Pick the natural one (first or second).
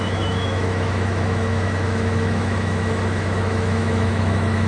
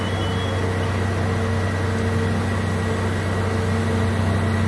second